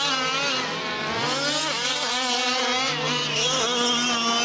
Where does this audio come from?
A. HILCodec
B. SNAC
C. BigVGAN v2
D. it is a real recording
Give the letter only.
D